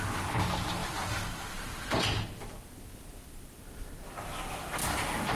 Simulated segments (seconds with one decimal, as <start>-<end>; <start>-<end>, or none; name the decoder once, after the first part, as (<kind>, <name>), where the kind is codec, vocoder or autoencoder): 0.8-2.1 (vocoder, BigVGAN v2); 3.2-4.0; 4.8-5.4